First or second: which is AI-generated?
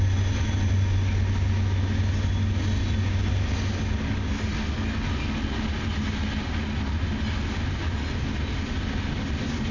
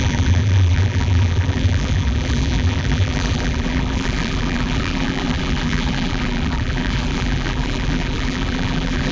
second